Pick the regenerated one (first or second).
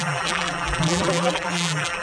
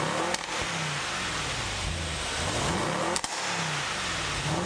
first